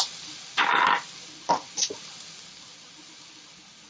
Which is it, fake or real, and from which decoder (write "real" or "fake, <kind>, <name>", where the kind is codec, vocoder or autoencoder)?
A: real